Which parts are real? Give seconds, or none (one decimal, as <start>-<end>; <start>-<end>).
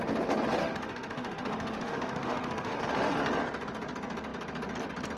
0.0-0.6; 2.8-5.2